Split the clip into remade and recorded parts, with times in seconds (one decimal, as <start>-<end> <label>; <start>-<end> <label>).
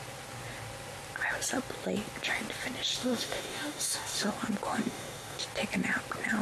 0.0-2.9 recorded; 2.9-4.3 remade; 4.3-4.8 recorded; 4.8-5.4 remade; 5.4-6.4 recorded